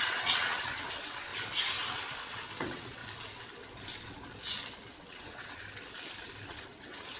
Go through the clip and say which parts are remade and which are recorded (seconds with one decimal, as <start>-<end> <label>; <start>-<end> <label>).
0.0-1.3 remade; 1.3-1.9 recorded; 1.9-3.0 remade; 3.0-4.9 recorded; 4.9-5.6 remade; 5.6-6.5 recorded; 6.5-7.2 remade